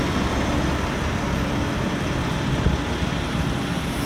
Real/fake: real